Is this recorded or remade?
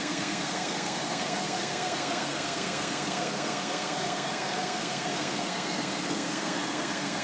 remade